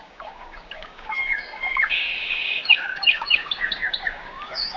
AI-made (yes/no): yes